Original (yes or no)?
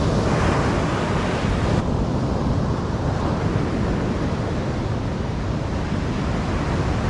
yes